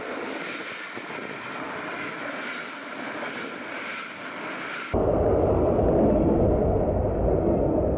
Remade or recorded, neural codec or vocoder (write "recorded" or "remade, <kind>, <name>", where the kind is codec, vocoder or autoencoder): recorded